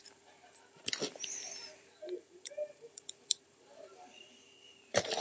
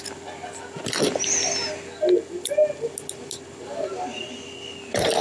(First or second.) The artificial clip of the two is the first